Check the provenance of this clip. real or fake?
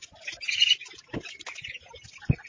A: real